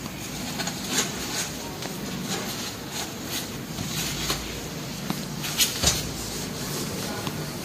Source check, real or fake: real